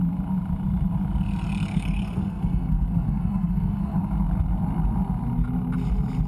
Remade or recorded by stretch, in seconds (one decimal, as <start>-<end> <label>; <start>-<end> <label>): 0.0-1.7 recorded; 1.7-4.0 remade; 4.0-6.3 recorded

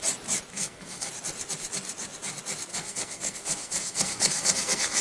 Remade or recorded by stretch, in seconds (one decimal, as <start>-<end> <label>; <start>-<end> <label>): 0.0-0.5 recorded; 0.5-1.1 remade; 1.1-2.7 recorded; 2.7-5.0 remade

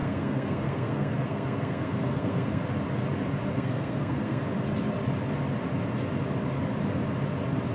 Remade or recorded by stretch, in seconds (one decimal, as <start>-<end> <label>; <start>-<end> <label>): 0.0-2.6 remade; 2.6-3.5 recorded; 3.5-4.4 remade; 4.4-7.7 recorded